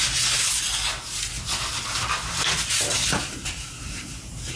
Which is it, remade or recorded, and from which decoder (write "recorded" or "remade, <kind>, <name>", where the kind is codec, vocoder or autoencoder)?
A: recorded